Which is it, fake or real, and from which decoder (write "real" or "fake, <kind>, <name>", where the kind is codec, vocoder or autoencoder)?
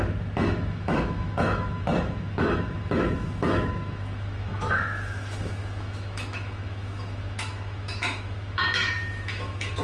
fake, autoencoder, DAC-VAE